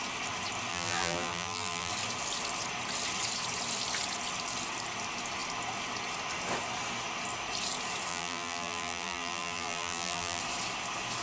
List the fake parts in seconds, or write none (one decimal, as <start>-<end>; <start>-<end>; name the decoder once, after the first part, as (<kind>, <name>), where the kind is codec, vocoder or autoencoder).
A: 0.7-1.9 (vocoder, BigVGAN v2); 8.1-10.4